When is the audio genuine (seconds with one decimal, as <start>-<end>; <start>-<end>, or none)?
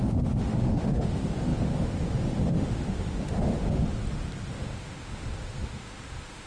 4.0-4.5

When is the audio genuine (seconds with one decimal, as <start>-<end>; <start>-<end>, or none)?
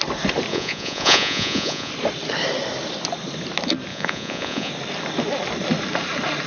0.0-0.5; 1.9-3.9; 4.7-6.5